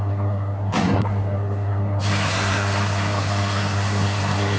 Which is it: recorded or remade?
remade